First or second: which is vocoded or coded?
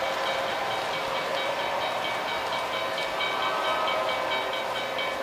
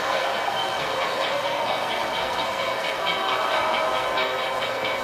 second